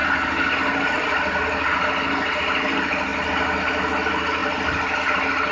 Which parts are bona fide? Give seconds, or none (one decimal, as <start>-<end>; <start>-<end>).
0.0-5.5